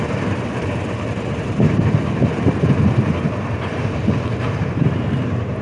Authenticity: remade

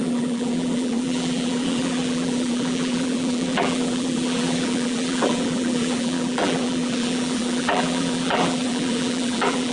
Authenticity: remade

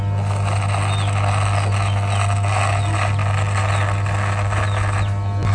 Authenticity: recorded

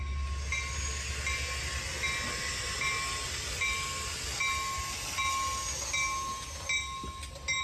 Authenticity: recorded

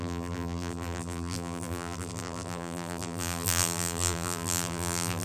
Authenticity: remade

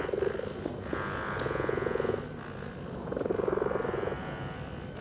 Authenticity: recorded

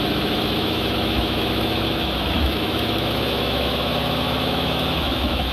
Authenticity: remade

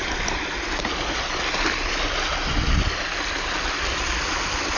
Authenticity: recorded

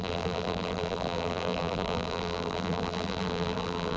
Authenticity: remade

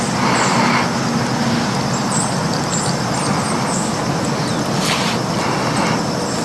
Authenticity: recorded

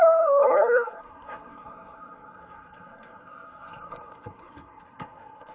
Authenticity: remade